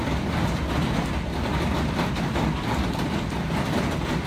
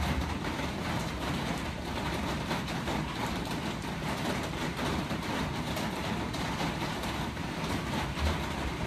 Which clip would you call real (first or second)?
first